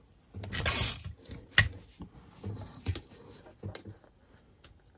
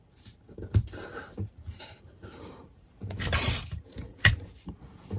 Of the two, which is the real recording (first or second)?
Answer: first